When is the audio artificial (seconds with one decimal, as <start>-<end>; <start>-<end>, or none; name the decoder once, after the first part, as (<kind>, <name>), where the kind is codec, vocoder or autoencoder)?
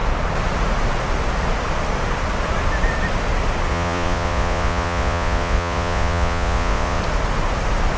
3.7-7.0 (vocoder, Vocos)